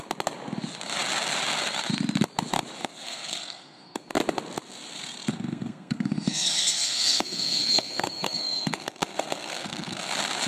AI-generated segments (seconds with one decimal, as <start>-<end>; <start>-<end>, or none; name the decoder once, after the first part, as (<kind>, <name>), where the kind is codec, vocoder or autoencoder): 2.8-4.1 (codec, SNAC); 5.3-10.1